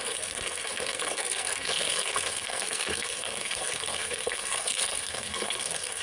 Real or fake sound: fake